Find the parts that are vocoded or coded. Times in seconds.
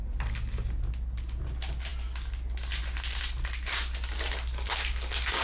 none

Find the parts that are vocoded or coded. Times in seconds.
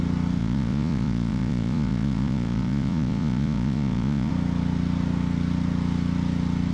0.4-4.3 (vocoder, Vocos)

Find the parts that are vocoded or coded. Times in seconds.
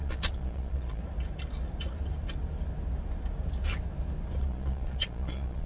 0.0-1.0 (vocoder, Vocos); 4.4-5.7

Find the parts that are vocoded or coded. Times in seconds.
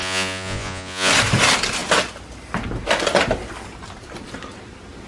0.0-1.1 (vocoder, Vocos)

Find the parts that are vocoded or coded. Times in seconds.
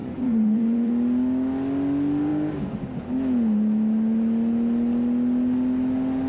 0.0-0.9 (vocoder, Vocos)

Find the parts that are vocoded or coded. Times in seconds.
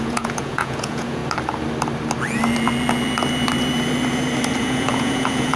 0.0-1.2 (vocoder, Vocos); 4.6-5.6